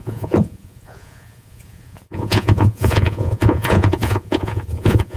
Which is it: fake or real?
fake